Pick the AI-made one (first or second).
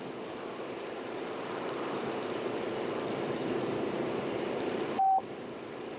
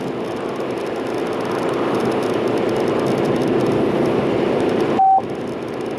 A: first